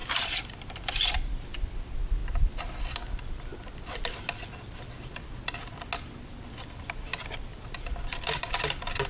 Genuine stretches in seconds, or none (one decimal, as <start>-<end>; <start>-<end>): 0.6-7.5; 8.4-9.1